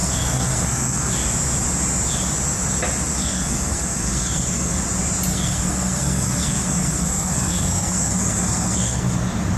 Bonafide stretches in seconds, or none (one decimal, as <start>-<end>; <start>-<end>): 1.1-3.2; 4.8-5.3; 9.1-9.6